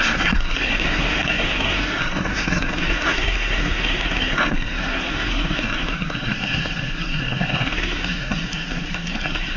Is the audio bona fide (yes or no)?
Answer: no